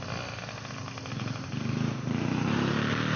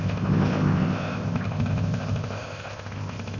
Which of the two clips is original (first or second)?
first